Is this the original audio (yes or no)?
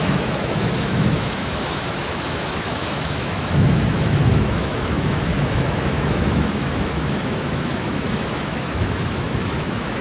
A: no